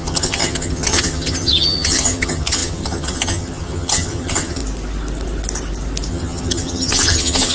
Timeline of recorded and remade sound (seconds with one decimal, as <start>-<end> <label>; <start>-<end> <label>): 0.0-4.6 remade; 4.6-6.1 recorded; 6.1-7.5 remade